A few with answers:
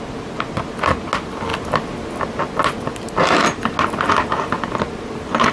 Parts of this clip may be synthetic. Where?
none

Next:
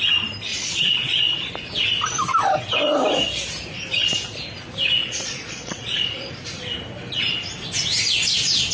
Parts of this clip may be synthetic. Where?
0.5-1.5 (vocoder, Vocos); 5.0-6.3